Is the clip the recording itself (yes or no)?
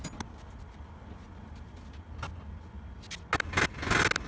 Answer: yes